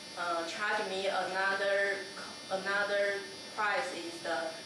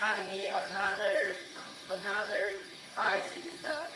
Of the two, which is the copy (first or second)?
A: second